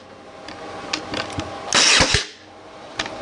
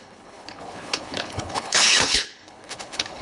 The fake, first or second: second